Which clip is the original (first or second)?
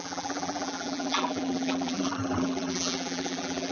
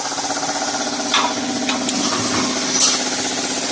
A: second